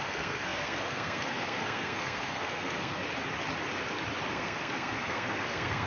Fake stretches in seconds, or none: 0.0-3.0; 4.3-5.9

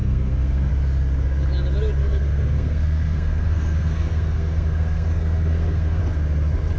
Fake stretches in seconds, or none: 0.0-0.7; 2.0-6.0

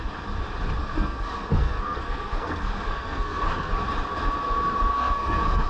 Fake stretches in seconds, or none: 0.8-3.7; 4.9-5.7